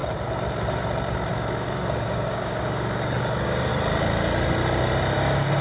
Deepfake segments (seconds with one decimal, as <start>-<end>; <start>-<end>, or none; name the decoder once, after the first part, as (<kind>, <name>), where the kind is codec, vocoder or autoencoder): 1.3-3.7 (codec, DAC)